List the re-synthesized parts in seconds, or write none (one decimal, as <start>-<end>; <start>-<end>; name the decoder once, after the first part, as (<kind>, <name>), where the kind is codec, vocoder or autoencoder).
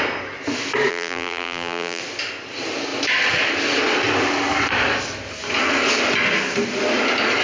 0.9-2.0 (vocoder, BigVGAN v2)